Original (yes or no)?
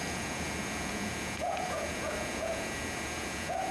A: no